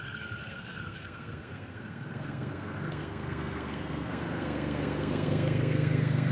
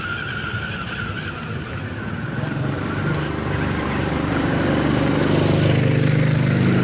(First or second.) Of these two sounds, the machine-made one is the first